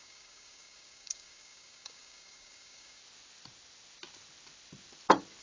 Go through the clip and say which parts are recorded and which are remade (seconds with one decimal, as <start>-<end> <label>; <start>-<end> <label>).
0.0-3.0 remade; 3.0-5.4 recorded